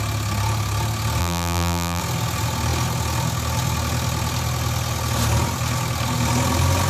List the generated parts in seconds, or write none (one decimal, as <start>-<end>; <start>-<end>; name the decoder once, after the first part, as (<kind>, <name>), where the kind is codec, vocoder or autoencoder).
1.2-2.0 (vocoder, BigVGAN v2)